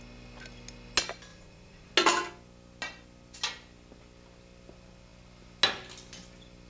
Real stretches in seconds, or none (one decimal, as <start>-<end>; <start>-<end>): 0.0-1.3; 1.9-6.7